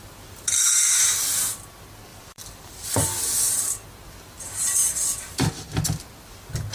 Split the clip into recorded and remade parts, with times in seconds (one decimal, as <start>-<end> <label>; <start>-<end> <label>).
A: 0.0-0.6 remade; 0.6-2.1 recorded; 2.1-3.2 remade; 3.2-4.8 recorded; 4.8-5.7 remade; 5.7-6.7 recorded